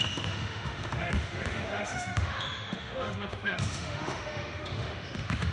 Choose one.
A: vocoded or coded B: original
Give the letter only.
A